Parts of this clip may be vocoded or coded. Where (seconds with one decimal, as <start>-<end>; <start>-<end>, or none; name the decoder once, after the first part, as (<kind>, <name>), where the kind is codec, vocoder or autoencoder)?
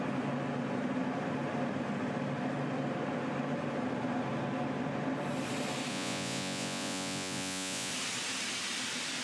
5.9-7.9 (vocoder, Vocos)